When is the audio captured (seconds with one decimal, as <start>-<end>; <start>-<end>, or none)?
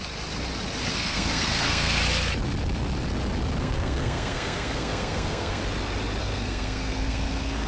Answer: 0.0-0.9; 2.0-3.6; 5.6-6.2